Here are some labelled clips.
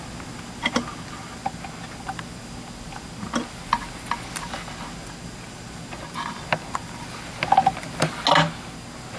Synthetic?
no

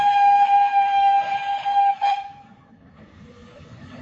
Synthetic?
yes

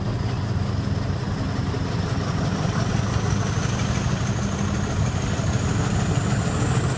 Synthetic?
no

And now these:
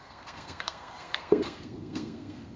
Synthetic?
yes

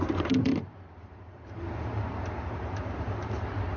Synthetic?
yes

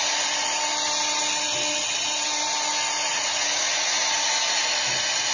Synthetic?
no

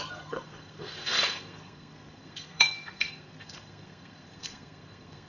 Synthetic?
yes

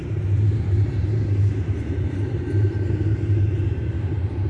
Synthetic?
yes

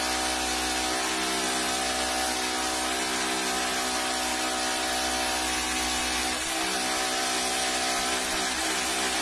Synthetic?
no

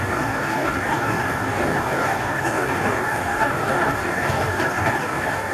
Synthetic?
yes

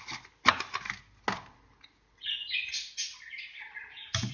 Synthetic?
no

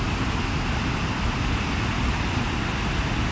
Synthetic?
no